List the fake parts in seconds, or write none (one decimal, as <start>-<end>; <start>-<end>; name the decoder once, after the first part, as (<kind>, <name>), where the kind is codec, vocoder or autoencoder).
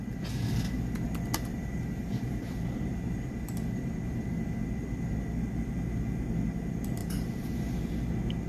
1.5-4.6 (vocoder, BigVGAN v2); 7.0-7.9